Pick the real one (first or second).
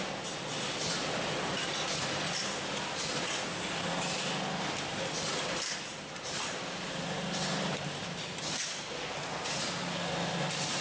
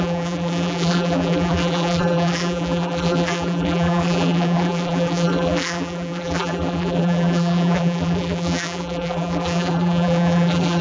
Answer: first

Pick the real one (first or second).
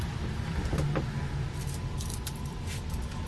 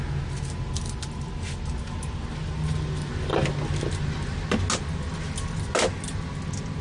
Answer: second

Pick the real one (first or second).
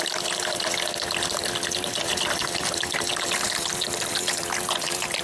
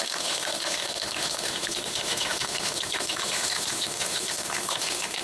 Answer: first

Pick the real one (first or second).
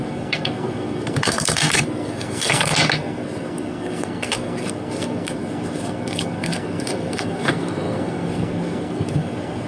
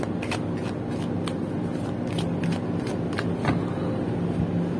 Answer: second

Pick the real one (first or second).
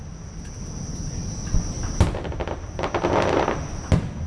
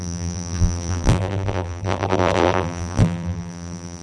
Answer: first